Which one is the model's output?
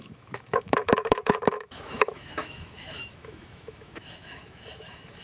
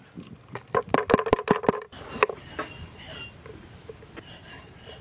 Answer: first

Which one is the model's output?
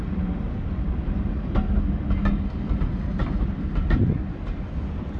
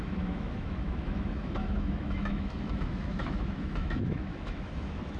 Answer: second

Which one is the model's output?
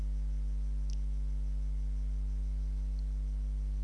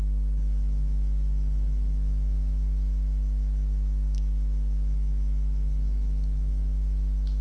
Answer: second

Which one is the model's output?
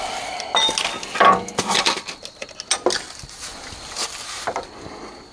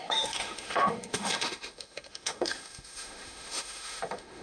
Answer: second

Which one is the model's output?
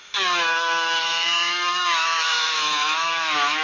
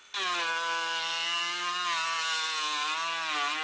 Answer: first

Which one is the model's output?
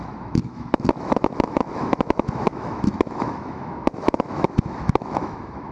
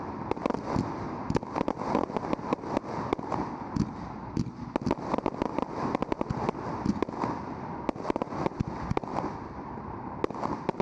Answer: first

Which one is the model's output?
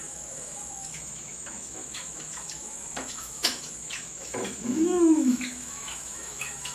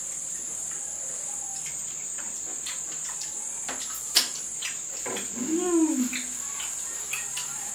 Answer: first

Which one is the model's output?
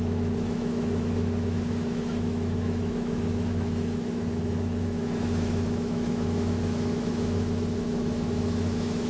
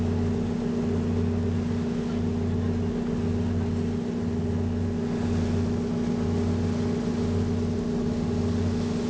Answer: first